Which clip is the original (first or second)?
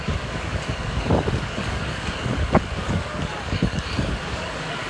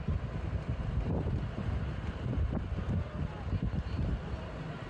second